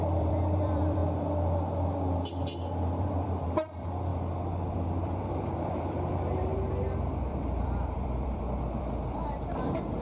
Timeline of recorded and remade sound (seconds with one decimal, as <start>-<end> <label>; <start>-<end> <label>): 0.0-1.0 remade; 1.0-3.0 recorded; 3.0-4.1 remade; 4.1-4.7 recorded; 4.7-10.0 remade